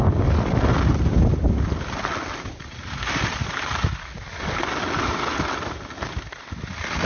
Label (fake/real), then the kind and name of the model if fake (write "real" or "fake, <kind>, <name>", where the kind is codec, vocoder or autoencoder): real